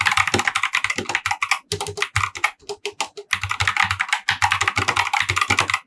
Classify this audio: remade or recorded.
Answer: recorded